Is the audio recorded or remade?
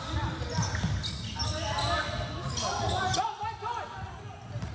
recorded